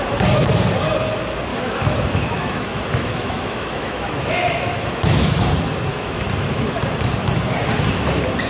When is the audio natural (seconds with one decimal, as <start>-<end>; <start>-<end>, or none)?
0.0-1.5; 5.5-5.9; 6.8-8.5